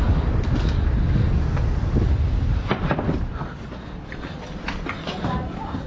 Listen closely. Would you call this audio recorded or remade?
recorded